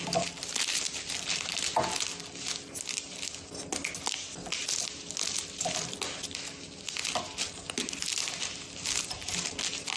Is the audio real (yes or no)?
yes